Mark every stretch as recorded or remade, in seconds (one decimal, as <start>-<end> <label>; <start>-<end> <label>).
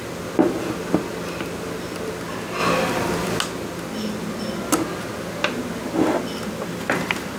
0.0-7.4 recorded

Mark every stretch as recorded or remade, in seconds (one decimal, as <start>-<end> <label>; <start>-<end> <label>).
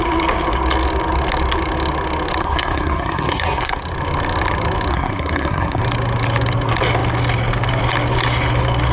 0.0-2.4 recorded; 2.4-3.8 remade; 3.8-4.9 recorded; 4.9-5.8 remade; 5.8-8.9 recorded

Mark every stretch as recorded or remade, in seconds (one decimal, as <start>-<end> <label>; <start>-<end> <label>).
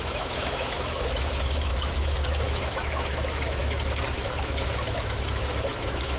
0.0-6.2 remade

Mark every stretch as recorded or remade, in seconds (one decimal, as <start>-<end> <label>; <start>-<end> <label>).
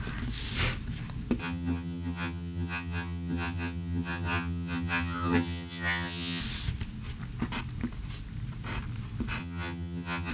0.0-1.4 recorded; 1.4-6.4 remade; 6.4-9.4 recorded; 9.4-10.3 remade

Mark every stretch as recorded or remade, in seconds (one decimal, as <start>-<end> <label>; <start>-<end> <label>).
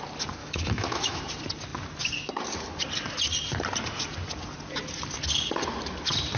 0.0-0.4 recorded; 0.4-1.2 remade; 1.2-6.4 recorded